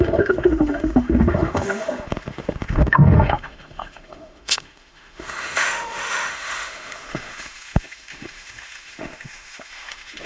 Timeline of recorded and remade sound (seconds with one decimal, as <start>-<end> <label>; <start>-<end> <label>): 0.0-10.3 remade